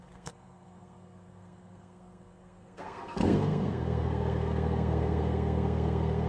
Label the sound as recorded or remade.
remade